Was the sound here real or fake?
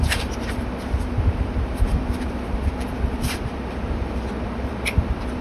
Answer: fake